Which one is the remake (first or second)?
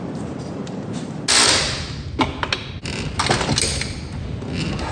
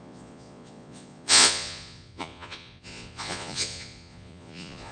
second